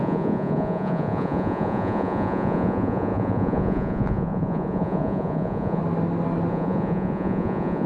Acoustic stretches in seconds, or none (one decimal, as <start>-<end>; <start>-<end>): 5.8-6.5